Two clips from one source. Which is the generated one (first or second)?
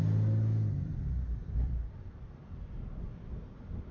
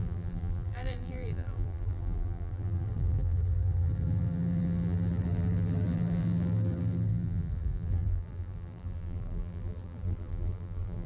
second